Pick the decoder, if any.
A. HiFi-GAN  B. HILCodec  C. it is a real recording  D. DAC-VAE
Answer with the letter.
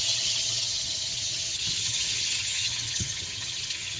A